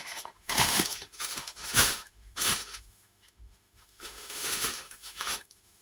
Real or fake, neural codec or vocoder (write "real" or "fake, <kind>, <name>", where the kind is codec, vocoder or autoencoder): fake, autoencoder, DAC-VAE